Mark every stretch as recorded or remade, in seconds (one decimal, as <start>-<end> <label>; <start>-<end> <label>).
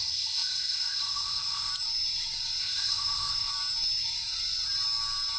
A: 0.0-1.7 remade; 1.7-2.6 recorded; 2.6-3.5 remade; 3.5-5.4 recorded